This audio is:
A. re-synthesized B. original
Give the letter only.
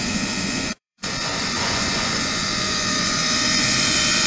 A